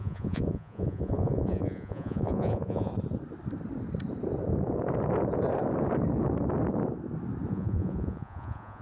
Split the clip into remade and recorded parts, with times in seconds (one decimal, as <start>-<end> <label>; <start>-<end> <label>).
0.0-2.9 remade; 2.9-7.5 recorded; 7.5-8.8 remade